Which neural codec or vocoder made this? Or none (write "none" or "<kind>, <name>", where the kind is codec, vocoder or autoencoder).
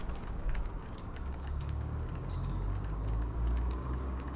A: codec, DAC